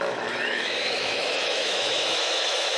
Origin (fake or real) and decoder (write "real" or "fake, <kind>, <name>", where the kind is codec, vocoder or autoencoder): fake, autoencoder, DAC-VAE